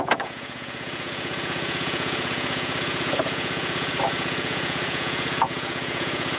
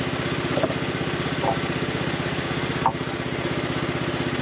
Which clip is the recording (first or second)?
second